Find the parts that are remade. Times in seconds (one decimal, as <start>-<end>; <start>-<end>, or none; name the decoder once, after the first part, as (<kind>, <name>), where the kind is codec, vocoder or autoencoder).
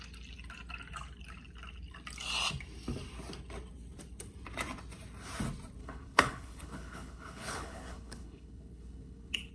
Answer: 5.8-9.5 (codec, HILCodec)